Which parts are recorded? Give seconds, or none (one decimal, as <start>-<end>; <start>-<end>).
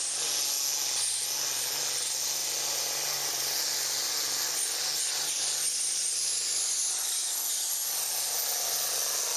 0.0-9.4